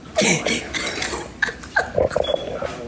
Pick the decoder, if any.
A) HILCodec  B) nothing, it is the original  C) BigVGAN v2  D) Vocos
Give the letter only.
C